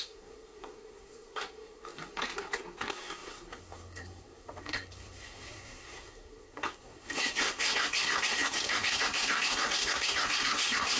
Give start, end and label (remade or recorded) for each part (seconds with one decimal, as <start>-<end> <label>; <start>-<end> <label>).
0.0-11.0 remade